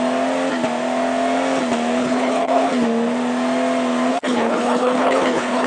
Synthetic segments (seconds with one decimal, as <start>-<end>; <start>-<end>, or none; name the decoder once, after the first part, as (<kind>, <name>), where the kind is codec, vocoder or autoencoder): 2.0-2.7 (codec, HILCodec); 4.1-5.7